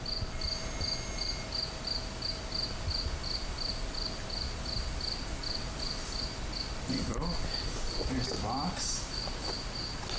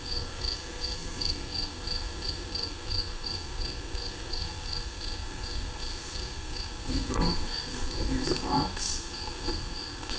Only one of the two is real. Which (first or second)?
first